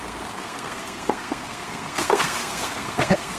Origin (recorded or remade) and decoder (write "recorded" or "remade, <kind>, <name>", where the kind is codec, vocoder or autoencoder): remade, codec, SNAC